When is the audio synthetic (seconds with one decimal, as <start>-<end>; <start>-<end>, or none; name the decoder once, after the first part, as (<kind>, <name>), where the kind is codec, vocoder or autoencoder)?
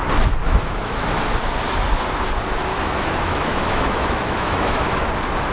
0.4-1.1 (autoencoder, DAC-VAE); 2.7-5.1